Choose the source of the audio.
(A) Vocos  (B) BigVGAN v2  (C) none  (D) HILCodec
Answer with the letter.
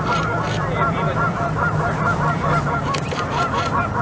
B